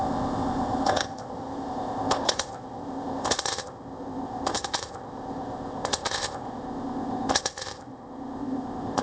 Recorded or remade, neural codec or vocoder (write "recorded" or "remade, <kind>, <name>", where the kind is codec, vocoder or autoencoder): remade, codec, ZipCodec